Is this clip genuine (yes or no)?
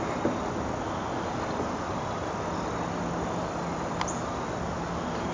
yes